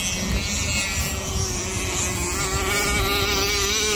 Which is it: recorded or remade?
recorded